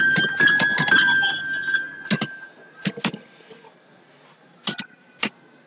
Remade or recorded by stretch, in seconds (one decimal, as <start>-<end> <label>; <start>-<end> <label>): 0.0-5.7 recorded